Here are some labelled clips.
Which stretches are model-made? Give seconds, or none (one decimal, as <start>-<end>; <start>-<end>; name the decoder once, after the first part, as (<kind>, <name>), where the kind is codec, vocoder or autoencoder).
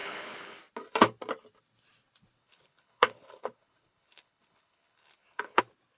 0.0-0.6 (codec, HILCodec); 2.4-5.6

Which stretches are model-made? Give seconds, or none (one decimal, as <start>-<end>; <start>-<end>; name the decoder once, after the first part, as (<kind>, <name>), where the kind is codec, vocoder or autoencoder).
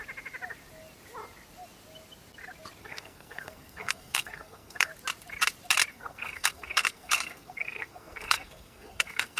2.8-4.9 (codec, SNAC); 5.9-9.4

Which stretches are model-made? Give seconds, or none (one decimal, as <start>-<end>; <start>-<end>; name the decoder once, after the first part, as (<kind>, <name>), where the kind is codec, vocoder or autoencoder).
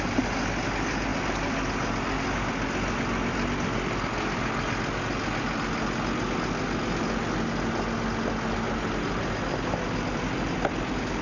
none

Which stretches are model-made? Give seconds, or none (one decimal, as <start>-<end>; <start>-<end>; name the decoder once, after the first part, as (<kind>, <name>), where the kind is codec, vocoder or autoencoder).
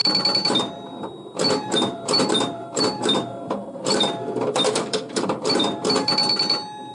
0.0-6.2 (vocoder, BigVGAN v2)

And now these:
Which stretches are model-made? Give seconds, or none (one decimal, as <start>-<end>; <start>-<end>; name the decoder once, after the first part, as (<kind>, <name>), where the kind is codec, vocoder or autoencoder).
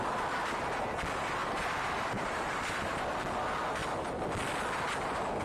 1.4-3.0 (vocoder, BigVGAN v2)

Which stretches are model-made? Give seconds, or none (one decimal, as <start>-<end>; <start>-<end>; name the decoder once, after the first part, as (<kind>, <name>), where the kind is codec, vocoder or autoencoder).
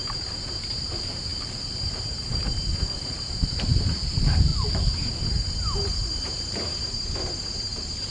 0.0-8.1 (vocoder, BigVGAN v2)